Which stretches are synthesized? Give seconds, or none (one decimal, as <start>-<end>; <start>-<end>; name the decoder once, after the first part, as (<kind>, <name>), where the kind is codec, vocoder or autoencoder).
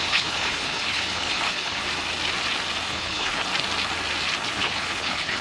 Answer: 0.0-1.8 (codec, HILCodec); 2.9-3.4; 4.5-5.4